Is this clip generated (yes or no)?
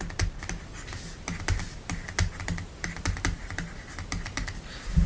no